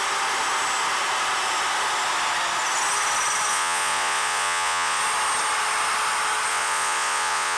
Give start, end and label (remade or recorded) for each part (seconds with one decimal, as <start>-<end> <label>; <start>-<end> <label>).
0.0-3.5 recorded; 3.5-5.0 remade; 5.0-6.5 recorded; 6.5-7.6 remade